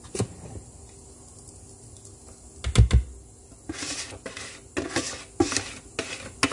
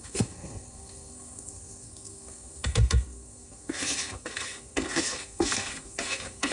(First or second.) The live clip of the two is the first